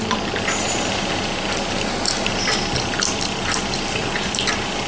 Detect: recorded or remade recorded